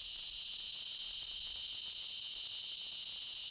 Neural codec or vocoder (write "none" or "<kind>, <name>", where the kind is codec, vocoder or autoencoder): none